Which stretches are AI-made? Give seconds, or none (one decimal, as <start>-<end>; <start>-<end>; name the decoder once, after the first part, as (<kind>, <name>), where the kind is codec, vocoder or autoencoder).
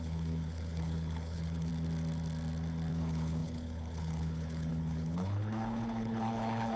0.0-1.7 (codec, HILCodec); 2.9-6.8